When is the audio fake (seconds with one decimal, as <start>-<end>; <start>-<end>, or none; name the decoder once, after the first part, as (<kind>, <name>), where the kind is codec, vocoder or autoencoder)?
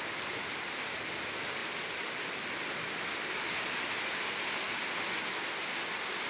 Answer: none